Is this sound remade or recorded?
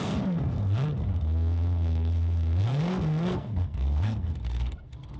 remade